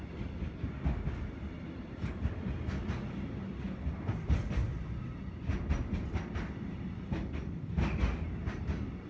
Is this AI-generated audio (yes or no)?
no